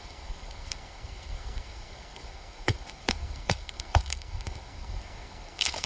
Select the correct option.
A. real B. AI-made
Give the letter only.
B